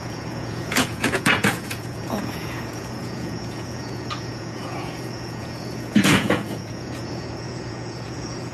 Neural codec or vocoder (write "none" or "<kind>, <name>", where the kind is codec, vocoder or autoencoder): vocoder, Vocos